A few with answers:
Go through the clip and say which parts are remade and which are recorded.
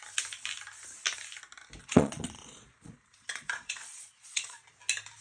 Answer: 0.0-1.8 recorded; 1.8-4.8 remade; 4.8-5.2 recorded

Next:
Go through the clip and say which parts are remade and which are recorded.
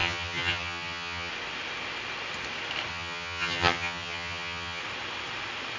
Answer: 0.0-1.3 remade; 1.3-2.9 recorded; 2.9-4.8 remade; 4.8-5.8 recorded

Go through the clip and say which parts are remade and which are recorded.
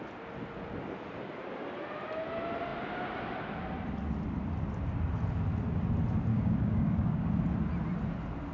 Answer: 0.0-6.3 recorded; 6.3-7.4 remade; 7.4-8.5 recorded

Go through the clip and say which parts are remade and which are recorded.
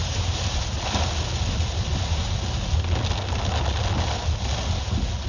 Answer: 0.0-0.8 remade; 0.8-5.3 recorded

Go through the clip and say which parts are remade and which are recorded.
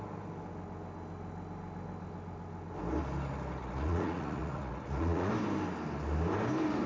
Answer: 0.0-3.6 recorded; 3.6-5.3 remade; 5.3-6.9 recorded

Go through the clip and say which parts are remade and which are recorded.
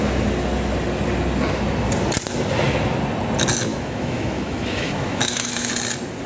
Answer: 0.0-3.7 recorded; 3.7-5.7 remade; 5.7-6.3 recorded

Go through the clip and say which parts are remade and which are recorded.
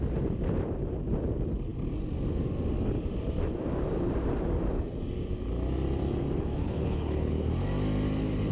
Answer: 0.0-6.6 recorded; 6.6-7.5 remade; 7.5-8.5 recorded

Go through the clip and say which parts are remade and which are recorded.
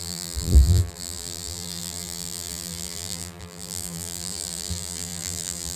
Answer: 0.0-5.8 remade